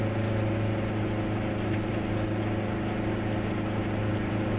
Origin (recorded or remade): recorded